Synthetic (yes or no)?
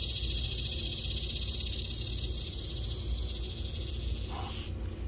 no